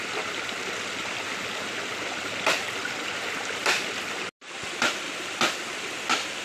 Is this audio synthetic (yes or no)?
no